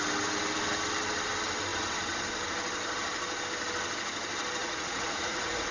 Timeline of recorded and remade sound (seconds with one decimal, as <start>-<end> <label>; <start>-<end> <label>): 0.0-4.6 recorded; 4.6-5.7 remade